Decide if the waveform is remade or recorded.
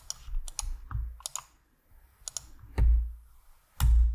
recorded